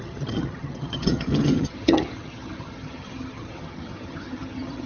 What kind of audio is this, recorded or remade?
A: remade